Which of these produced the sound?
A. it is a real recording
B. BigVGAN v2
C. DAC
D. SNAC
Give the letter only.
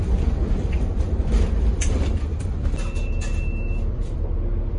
B